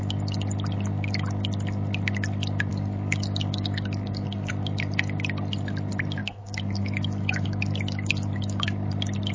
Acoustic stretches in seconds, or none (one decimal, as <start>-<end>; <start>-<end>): 0.0-2.7; 4.5-6.2; 8.9-9.3